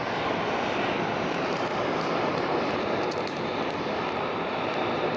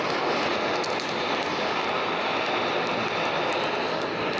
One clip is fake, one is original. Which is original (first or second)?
second